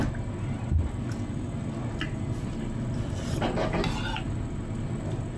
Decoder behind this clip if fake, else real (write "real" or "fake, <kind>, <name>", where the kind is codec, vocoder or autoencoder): real